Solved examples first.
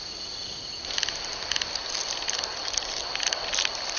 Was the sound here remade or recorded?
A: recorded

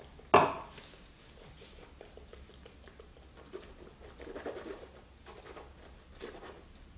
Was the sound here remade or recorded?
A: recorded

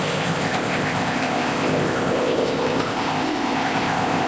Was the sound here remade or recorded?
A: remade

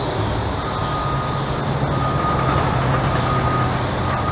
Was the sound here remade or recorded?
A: recorded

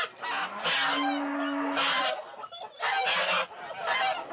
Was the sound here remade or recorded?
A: recorded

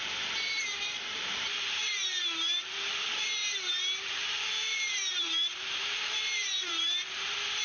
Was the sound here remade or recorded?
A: remade